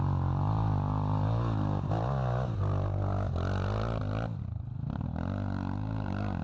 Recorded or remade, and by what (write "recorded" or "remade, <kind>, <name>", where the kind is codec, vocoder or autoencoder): recorded